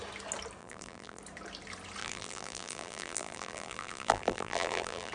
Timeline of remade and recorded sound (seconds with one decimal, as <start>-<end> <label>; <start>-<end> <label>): 0.0-0.6 recorded; 0.6-1.2 remade; 1.2-2.0 recorded; 2.0-5.1 remade